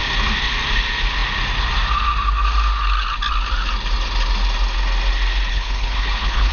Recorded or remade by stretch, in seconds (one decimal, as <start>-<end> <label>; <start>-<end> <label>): 0.0-5.5 recorded; 5.5-6.5 remade